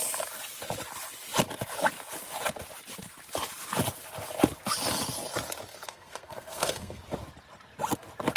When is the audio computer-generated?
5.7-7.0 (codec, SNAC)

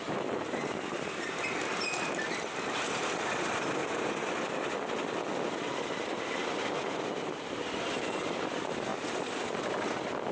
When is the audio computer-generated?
none

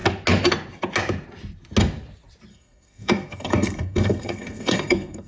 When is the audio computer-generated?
2.5-5.3 (codec, SNAC)

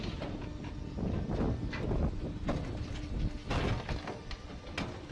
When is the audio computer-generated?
none

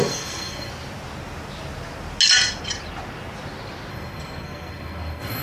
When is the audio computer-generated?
0.0-0.7 (codec, SNAC); 3.9-5.4

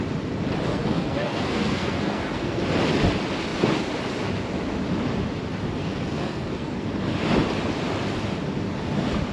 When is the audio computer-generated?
0.7-2.6 (codec, SNAC); 5.8-6.9

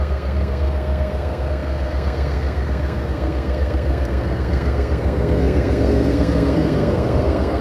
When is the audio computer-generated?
0.0-7.6 (codec, SNAC)